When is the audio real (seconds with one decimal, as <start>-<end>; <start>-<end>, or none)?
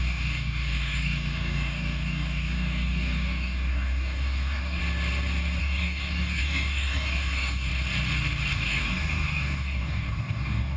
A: 4.8-5.6; 7.7-8.5